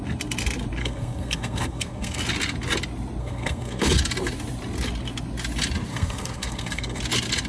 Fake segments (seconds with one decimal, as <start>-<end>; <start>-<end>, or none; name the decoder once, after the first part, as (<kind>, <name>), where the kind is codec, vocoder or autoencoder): 0.8-2.2 (codec, SNAC); 3.2-3.9; 5.9-7.0